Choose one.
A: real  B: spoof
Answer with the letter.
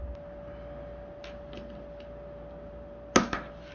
A